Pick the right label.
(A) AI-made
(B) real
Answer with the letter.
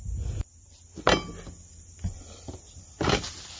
B